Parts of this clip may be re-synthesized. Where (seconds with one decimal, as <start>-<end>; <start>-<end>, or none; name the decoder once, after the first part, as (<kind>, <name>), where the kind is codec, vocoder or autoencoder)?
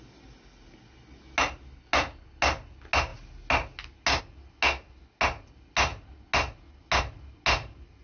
none